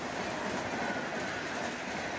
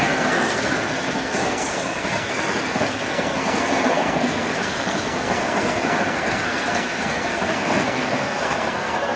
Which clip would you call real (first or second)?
first